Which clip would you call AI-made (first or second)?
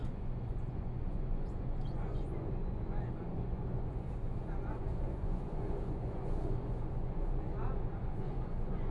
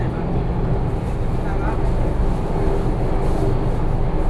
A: first